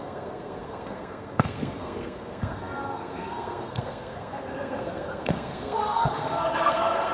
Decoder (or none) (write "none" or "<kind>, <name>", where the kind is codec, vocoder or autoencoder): codec, SNAC